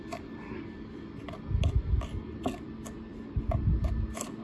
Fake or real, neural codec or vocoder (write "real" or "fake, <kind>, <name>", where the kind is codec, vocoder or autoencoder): real